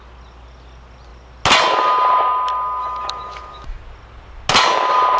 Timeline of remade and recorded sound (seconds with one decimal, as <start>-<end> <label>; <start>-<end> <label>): 0.0-2.8 recorded; 2.8-3.8 remade; 3.8-5.2 recorded

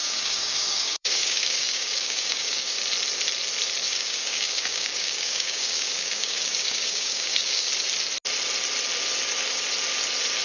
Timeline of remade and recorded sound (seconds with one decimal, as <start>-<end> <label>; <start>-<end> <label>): 0.0-2.8 remade; 2.8-3.8 recorded; 3.8-7.7 remade; 7.7-10.4 recorded

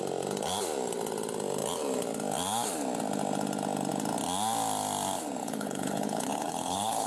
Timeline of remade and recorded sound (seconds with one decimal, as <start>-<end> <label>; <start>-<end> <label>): 0.0-5.4 recorded; 5.4-7.1 remade

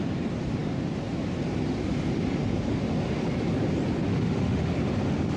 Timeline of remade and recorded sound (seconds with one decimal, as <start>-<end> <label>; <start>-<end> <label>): 0.0-4.1 recorded; 4.1-4.7 remade; 4.7-5.4 recorded